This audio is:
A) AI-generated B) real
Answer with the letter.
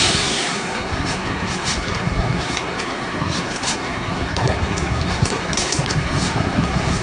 A